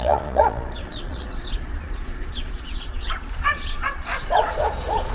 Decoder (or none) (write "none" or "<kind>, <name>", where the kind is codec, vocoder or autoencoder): vocoder, Vocos